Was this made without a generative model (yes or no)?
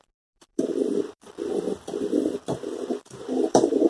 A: no